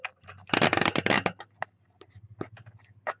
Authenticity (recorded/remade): recorded